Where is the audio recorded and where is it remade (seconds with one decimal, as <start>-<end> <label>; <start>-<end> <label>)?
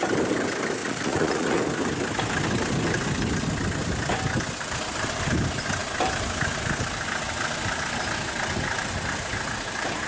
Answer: 0.0-0.8 recorded; 0.8-1.6 remade; 1.6-10.1 recorded